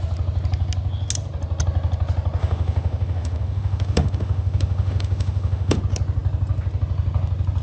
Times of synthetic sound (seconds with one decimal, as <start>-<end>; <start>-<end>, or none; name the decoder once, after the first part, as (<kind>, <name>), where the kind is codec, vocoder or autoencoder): 2.4-5.8 (autoencoder, DAC-VAE)